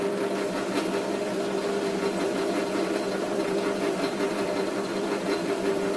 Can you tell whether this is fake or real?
fake